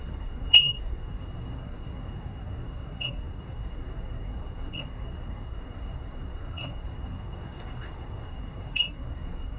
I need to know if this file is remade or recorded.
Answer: remade